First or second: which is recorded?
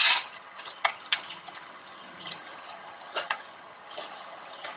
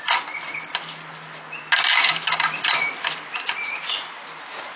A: second